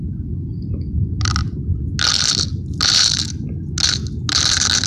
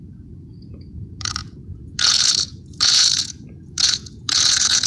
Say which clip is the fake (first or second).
second